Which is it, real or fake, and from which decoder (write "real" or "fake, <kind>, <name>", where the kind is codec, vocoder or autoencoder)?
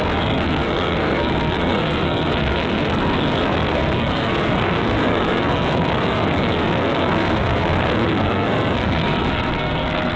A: fake, codec, SNAC